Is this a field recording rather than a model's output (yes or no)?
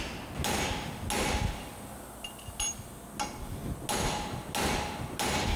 yes